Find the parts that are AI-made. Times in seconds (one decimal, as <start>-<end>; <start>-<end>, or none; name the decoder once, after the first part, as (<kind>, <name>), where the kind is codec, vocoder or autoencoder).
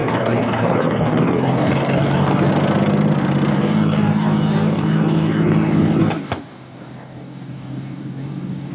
0.0-2.5 (codec, DAC); 3.5-8.7